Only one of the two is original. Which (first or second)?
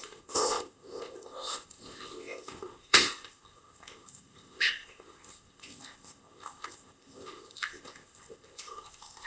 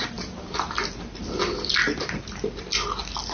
second